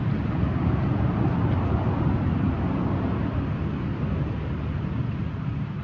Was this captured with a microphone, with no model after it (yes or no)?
yes